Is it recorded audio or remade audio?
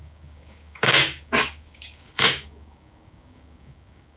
remade